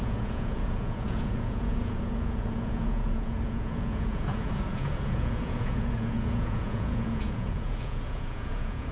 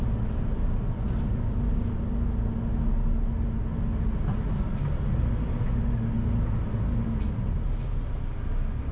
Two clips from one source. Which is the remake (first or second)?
first